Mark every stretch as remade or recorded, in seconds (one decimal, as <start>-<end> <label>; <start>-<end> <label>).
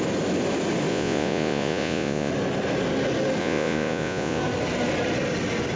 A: 0.0-0.9 recorded; 0.9-2.3 remade; 2.3-3.4 recorded; 3.4-4.4 remade; 4.4-5.8 recorded